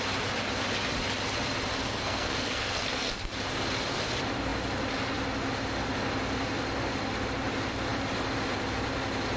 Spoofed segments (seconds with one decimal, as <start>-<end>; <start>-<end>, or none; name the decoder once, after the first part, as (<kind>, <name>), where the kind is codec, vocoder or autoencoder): 1.8-3.3 (codec, SNAC)